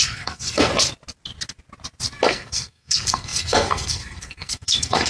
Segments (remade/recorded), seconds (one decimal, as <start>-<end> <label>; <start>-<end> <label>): 0.0-0.7 remade; 0.7-2.3 recorded; 2.3-5.1 remade